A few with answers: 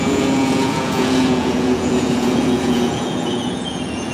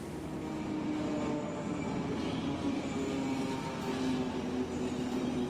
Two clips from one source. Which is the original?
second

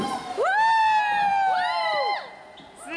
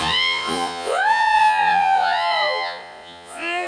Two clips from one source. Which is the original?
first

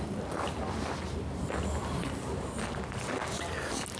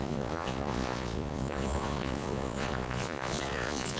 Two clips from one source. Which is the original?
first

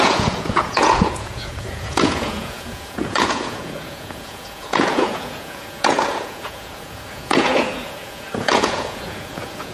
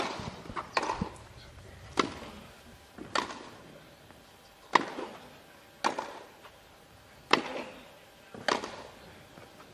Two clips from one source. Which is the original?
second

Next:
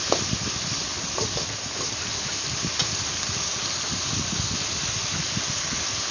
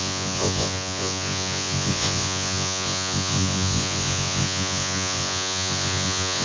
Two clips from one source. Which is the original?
first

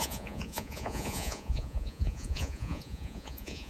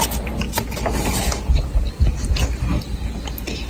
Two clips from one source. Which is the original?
second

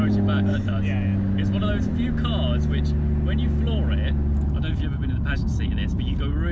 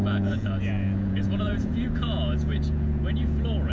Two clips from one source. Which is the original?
first